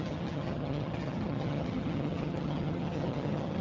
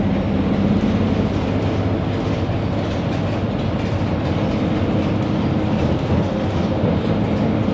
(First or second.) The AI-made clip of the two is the first